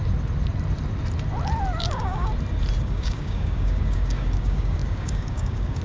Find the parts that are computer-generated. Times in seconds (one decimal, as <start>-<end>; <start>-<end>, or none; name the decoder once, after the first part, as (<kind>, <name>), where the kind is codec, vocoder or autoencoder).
1.8-2.3 (codec, DAC); 2.8-5.8